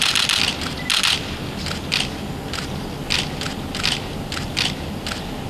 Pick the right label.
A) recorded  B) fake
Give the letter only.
A